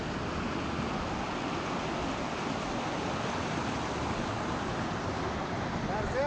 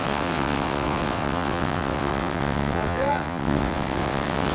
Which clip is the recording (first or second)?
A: first